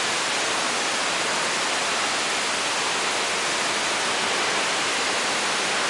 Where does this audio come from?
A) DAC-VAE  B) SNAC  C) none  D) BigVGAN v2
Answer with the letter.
C